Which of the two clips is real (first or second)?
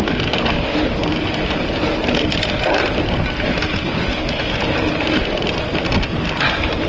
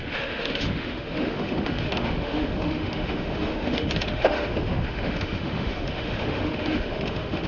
first